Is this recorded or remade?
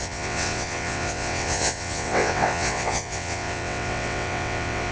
remade